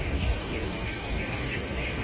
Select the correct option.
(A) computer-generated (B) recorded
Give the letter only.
A